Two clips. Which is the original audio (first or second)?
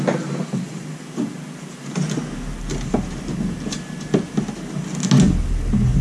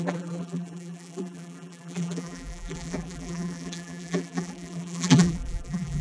first